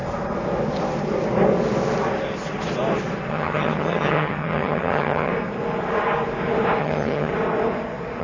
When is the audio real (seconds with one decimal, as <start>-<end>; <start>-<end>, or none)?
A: 0.0-3.3; 5.3-6.8; 7.3-8.2